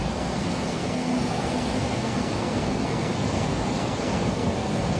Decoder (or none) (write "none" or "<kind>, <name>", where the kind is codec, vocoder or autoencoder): codec, SNAC